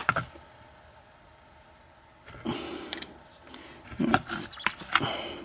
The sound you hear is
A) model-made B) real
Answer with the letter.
B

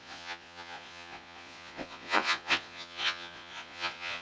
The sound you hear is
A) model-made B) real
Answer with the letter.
A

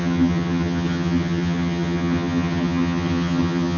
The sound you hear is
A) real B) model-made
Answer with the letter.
B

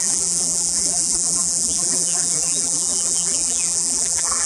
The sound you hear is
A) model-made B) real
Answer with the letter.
A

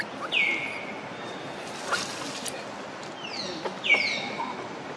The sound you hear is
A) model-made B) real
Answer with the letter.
B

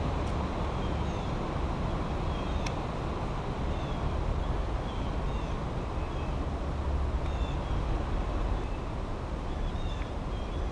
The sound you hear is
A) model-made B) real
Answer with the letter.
B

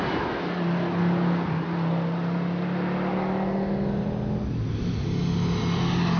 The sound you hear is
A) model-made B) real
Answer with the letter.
B